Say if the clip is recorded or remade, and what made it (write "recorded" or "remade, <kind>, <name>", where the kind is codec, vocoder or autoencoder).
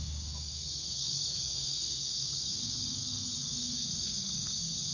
remade, codec, DAC